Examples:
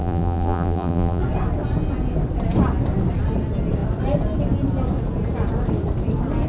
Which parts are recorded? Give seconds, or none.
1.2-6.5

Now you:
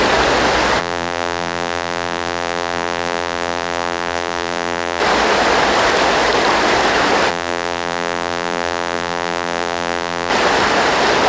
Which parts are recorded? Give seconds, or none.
0.0-0.8; 5.0-7.3; 10.3-11.3

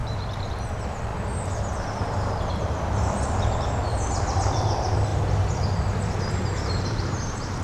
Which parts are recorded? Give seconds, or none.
1.1-2.5; 5.1-6.4

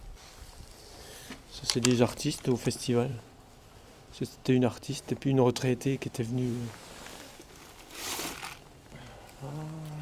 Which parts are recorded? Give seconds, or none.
0.7-1.5; 3.2-4.8; 5.6-10.0

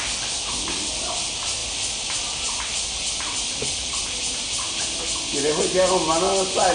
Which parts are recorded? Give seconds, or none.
0.0-6.7

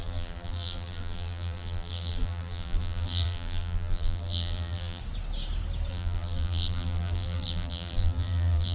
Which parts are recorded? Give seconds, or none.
5.0-5.9

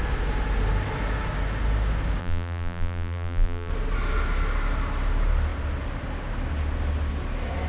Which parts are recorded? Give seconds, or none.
0.0-2.2; 3.7-7.7